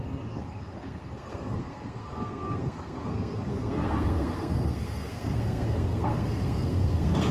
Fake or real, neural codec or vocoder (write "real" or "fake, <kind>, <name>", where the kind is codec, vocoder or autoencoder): fake, codec, SNAC